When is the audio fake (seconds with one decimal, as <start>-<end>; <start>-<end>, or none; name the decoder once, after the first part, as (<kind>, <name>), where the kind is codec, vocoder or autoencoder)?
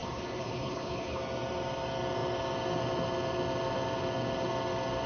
0.0-1.2 (codec, HILCodec)